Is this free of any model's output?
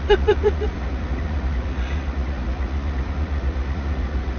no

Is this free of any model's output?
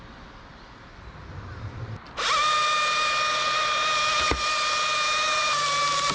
yes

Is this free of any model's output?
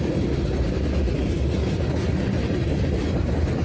yes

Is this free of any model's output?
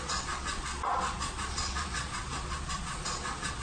no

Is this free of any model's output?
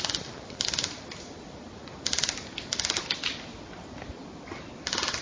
yes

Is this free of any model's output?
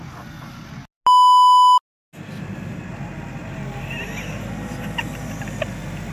yes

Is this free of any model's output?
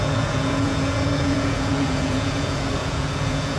no